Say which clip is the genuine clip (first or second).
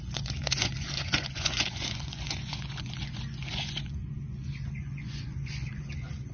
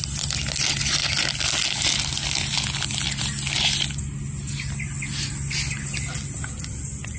second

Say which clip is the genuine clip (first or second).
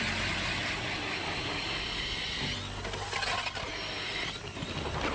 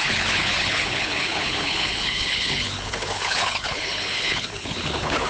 first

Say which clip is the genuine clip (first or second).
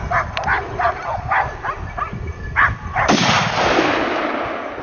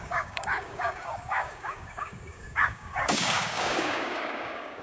first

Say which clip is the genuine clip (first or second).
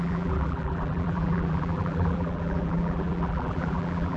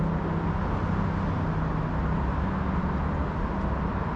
second